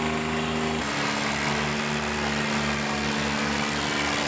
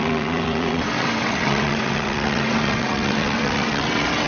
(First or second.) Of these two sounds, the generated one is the second